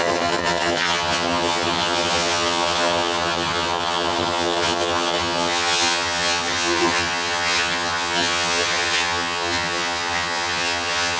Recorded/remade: remade